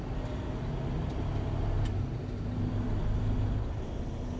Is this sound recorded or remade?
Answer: recorded